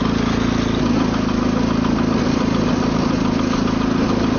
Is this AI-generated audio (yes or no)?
no